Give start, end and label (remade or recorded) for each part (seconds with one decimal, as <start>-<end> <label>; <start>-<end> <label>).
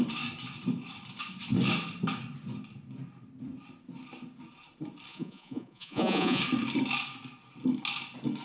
0.0-5.1 recorded; 5.1-6.4 remade; 6.4-8.4 recorded